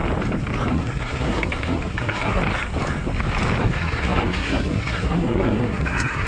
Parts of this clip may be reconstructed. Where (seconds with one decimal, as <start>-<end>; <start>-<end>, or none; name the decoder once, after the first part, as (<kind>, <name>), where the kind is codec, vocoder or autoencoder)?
0.7-2.4 (codec, SNAC); 3.6-6.3